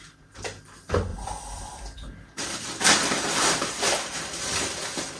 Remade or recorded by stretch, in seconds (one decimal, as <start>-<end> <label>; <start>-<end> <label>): 0.0-1.1 recorded; 1.1-4.2 remade; 4.2-5.2 recorded